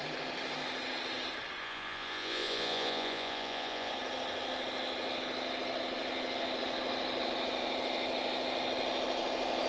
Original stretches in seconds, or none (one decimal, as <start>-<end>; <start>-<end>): 0.0-1.6; 3.9-9.7